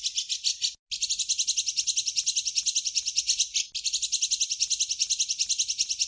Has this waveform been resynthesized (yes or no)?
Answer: no